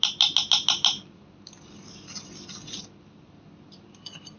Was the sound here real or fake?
real